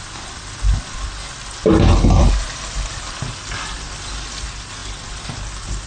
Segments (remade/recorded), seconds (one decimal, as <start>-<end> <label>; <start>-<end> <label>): 0.0-5.9 recorded